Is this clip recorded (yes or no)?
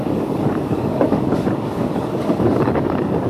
no